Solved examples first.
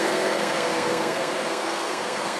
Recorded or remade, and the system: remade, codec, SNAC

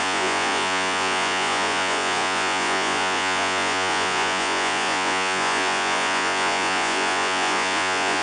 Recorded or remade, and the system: remade, vocoder, Vocos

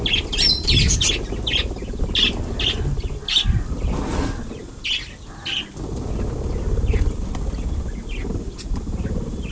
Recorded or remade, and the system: recorded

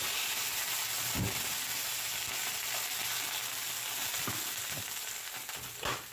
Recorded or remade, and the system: recorded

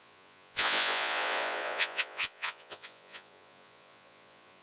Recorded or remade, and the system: remade, vocoder, Vocos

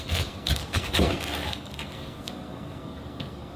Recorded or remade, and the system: remade, codec, SNAC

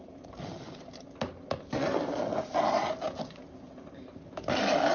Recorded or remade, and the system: recorded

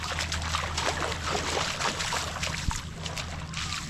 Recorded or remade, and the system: recorded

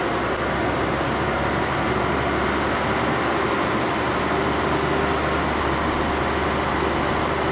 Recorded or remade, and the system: recorded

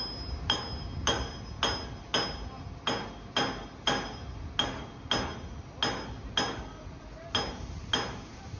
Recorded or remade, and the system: recorded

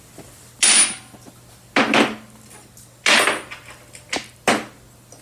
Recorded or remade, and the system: recorded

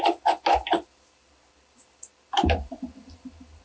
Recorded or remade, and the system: recorded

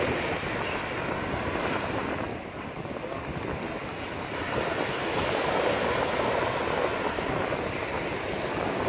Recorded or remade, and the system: recorded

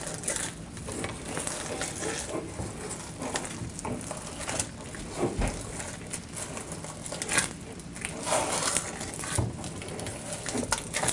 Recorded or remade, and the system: recorded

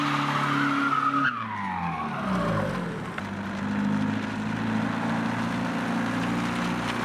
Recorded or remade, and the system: recorded